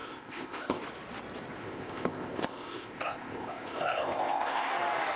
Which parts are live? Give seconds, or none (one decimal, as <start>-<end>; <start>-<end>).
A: 0.8-1.6; 4.7-5.2